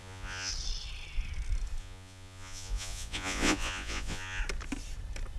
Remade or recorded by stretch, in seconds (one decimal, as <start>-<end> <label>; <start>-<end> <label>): 0.0-0.5 remade; 0.5-1.8 recorded; 1.8-4.4 remade; 4.4-5.4 recorded